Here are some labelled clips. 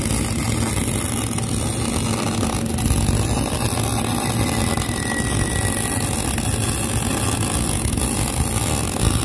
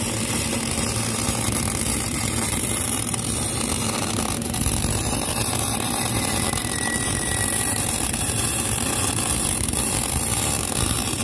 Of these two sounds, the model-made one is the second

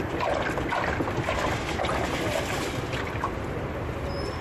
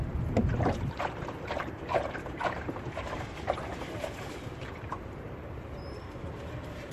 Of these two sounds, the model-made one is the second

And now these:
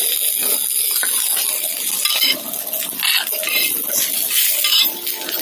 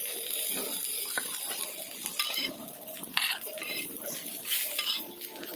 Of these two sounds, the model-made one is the second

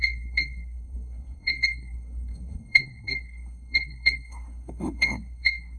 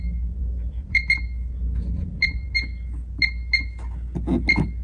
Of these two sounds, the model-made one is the first